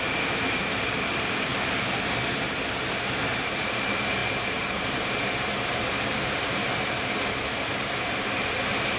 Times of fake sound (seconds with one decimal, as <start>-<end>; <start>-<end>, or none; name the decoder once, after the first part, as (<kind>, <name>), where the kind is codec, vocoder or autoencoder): 0.0-1.5 (vocoder, BigVGAN v2); 3.0-9.0